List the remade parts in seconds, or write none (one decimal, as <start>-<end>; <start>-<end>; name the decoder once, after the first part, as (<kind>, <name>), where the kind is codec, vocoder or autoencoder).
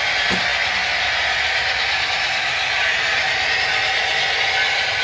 none